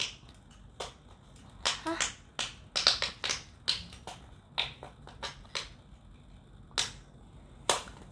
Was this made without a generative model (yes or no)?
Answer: yes